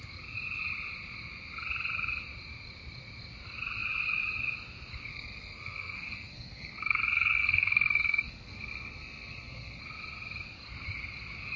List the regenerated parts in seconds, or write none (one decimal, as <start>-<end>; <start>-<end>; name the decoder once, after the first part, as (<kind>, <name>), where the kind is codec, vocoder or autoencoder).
5.1-9.8 (codec, SNAC)